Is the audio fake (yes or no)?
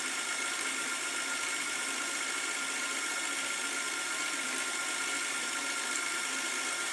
yes